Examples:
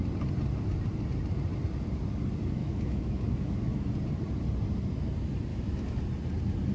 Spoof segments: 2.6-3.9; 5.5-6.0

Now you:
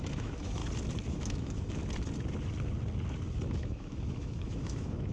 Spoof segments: 0.0-0.6; 1.1-1.8; 3.5-5.1

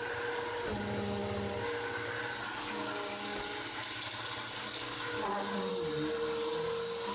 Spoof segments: none

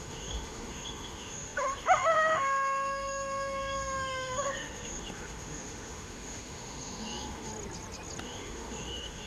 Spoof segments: 0.0-7.5; 8.2-9.3

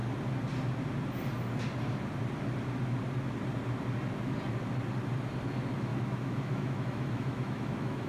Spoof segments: 5.9-8.1

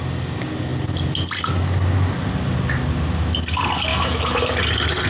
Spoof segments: 3.9-4.6

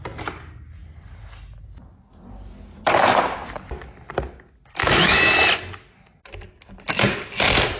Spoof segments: 4.8-5.3

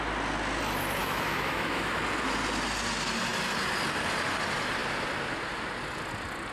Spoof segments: 1.0-2.0